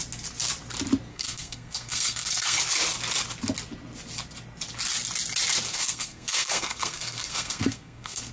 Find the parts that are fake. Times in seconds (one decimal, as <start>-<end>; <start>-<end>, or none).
1.1-2.6; 5.7-8.3